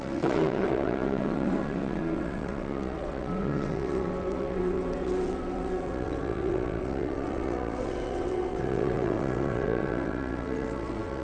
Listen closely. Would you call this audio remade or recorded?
remade